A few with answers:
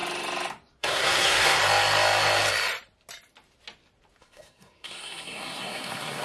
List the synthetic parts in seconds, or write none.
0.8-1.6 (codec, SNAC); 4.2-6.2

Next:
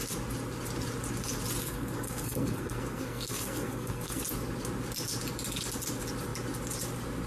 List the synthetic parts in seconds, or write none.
1.6-4.2 (codec, SNAC)

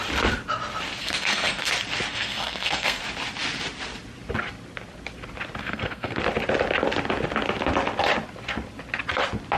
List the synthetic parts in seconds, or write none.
1.0-1.7 (codec, SNAC); 2.1-3.0; 5.6-6.2

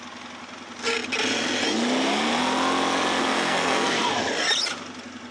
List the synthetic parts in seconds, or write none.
3.2-4.3 (codec, SNAC)

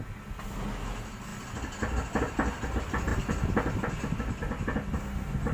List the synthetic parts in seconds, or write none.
none

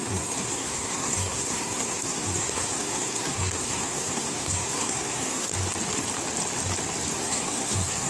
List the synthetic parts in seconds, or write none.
0.0-5.5 (codec, SNAC); 7.1-8.1